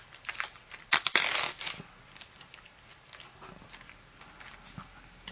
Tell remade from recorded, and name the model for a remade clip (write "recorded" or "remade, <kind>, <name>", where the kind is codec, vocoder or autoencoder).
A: recorded